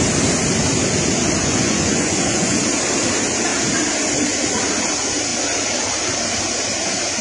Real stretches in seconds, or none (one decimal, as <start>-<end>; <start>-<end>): 0.0-1.4; 2.6-7.2